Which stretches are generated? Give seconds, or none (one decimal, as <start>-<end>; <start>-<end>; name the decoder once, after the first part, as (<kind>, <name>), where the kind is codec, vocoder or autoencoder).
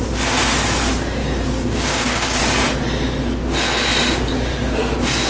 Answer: 1.2-2.4 (codec, DAC)